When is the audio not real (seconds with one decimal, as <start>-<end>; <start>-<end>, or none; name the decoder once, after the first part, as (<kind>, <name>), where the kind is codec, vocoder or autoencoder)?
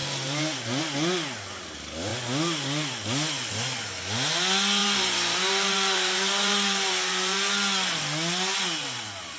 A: 0.0-0.8 (vocoder, BigVGAN v2); 4.8-7.5